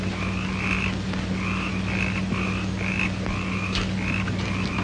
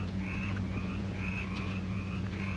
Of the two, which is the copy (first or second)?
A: second